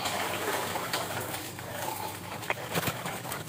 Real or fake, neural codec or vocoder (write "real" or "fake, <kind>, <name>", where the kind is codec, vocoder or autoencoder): fake, codec, DAC